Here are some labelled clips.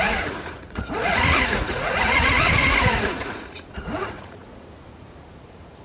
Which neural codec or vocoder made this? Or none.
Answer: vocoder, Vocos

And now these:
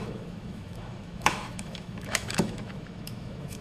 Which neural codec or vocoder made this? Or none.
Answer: autoencoder, DAC-VAE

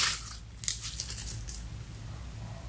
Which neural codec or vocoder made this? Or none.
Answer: none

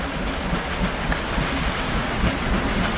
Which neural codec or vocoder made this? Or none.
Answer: none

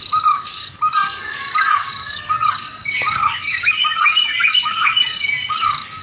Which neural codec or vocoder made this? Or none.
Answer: codec, DAC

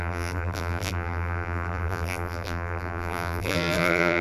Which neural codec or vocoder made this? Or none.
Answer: vocoder, BigVGAN v2